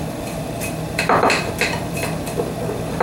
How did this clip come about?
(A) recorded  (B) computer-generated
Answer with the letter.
B